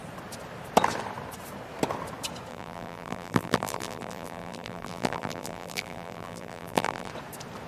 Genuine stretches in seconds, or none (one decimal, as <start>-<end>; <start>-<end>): 0.0-2.5; 7.1-7.7